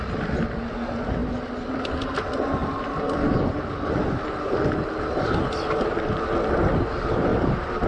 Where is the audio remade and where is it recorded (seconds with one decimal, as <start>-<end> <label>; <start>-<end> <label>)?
0.0-1.2 recorded; 1.2-1.7 remade; 1.7-7.3 recorded; 7.3-7.9 remade